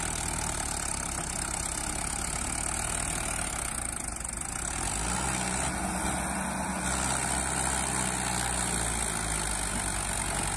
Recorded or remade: recorded